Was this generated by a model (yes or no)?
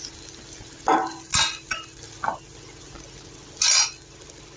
no